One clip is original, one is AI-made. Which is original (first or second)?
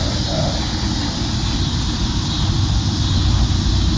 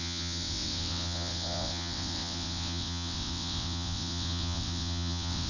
first